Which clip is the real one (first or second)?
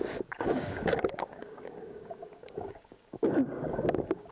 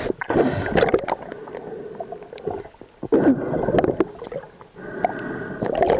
second